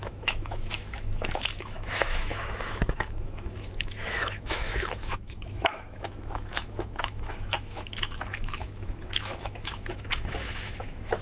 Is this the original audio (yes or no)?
no